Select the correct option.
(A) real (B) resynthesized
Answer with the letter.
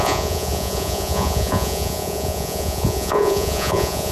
B